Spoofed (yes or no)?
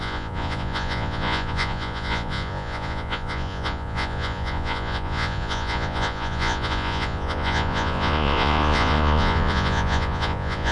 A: yes